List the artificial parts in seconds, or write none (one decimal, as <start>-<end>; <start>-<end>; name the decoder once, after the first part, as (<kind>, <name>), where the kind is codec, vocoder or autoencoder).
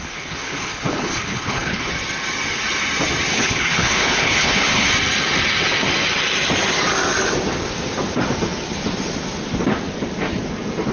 0.0-1.9 (codec, HILCodec); 3.3-4.9